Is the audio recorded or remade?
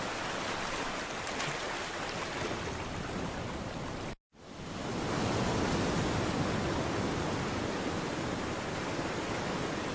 recorded